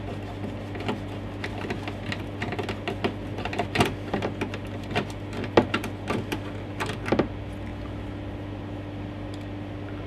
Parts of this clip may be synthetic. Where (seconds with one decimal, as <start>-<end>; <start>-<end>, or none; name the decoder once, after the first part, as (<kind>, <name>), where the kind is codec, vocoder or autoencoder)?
none